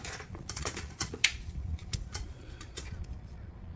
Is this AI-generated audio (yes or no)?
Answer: yes